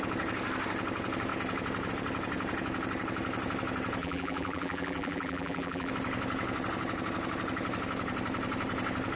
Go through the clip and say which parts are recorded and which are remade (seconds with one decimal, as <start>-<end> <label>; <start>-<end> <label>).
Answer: 0.0-4.0 recorded; 4.0-5.9 remade; 5.9-9.2 recorded